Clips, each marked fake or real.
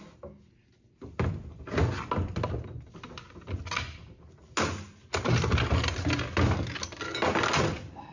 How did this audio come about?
real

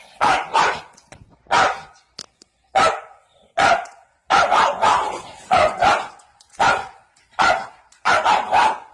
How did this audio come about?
fake